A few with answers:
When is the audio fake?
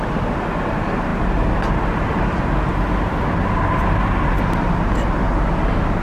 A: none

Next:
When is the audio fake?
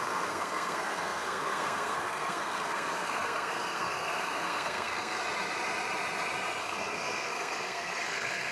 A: 0.0-5.2 (codec, SNAC); 6.6-8.5